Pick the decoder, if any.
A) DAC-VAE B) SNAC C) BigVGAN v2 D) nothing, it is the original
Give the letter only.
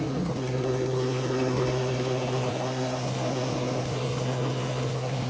B